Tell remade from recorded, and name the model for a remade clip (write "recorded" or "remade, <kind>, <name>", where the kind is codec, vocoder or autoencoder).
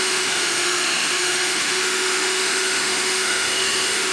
remade, autoencoder, DAC-VAE